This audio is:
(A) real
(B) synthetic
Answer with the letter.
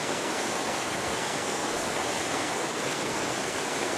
B